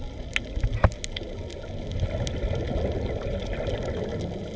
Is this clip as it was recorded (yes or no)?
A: yes